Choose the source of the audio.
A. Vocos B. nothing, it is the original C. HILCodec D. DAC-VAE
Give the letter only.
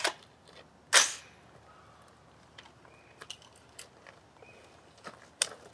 B